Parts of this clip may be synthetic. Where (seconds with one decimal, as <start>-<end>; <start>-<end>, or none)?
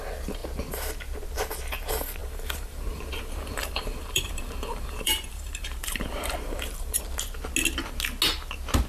2.2-7.0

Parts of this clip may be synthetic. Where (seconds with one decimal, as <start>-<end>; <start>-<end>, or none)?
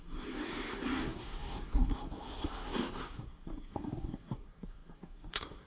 0.0-5.7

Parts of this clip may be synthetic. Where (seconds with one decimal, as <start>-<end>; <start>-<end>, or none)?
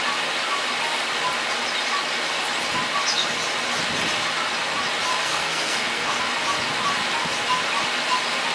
5.1-6.2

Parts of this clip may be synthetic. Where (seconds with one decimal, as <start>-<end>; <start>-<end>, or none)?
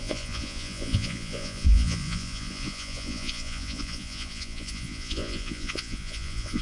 0.0-6.6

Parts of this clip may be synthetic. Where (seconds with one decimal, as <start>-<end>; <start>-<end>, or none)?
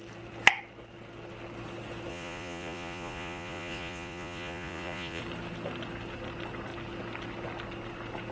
2.1-5.2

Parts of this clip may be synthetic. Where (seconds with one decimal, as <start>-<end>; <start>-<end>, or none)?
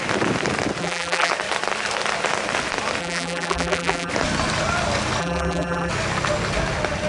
0.8-1.3; 3.0-4.1; 5.2-5.9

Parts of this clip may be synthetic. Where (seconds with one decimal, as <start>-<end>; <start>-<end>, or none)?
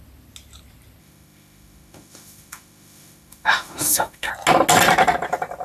1.0-4.3